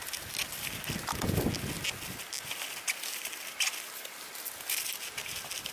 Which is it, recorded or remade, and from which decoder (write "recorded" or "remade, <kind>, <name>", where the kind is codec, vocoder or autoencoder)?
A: recorded